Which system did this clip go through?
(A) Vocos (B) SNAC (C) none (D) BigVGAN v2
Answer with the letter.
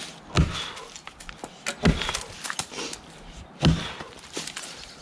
C